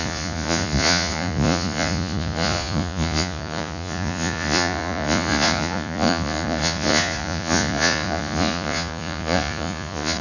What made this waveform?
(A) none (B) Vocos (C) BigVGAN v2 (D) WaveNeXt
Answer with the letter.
B